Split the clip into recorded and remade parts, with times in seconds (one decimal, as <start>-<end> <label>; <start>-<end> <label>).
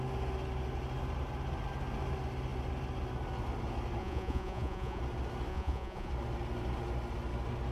0.0-4.0 recorded; 4.0-5.0 remade; 5.0-5.5 recorded; 5.5-6.1 remade; 6.1-7.7 recorded